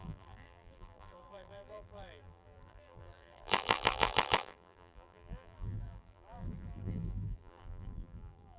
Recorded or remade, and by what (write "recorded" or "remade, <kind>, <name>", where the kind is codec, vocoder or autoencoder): remade, vocoder, BigVGAN v2